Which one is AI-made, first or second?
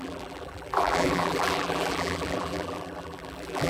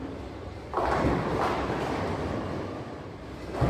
first